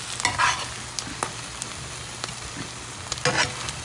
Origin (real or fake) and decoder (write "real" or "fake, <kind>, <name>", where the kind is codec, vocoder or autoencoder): real